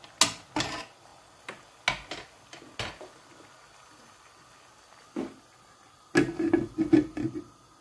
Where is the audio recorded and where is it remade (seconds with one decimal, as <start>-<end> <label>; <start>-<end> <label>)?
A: 0.0-7.8 recorded